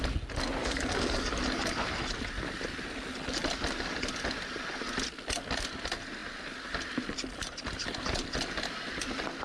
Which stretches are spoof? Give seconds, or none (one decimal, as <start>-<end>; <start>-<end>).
0.6-1.3